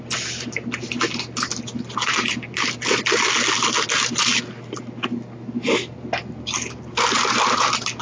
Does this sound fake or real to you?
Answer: real